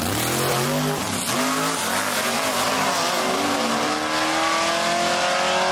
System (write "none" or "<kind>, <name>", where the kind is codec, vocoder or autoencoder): none